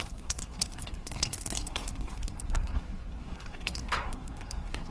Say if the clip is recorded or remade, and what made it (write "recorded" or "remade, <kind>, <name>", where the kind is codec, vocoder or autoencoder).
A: remade, codec, SNAC